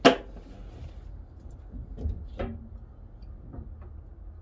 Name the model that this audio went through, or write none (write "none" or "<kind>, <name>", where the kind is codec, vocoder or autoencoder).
none